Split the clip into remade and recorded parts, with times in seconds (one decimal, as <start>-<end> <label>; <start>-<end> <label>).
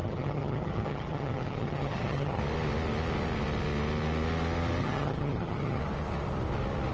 0.0-2.4 remade; 2.4-4.8 recorded; 4.8-5.8 remade; 5.8-6.9 recorded